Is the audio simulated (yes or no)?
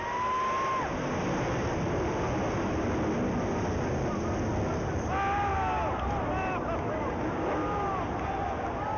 no